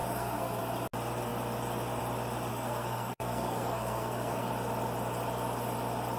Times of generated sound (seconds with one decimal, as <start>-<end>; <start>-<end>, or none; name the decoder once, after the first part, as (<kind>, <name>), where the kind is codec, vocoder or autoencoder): 0.0-0.6 (codec, SNAC); 2.5-4.5